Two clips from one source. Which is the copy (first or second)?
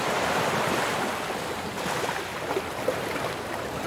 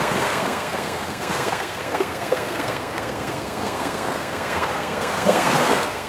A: second